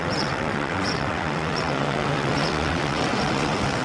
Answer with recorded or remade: remade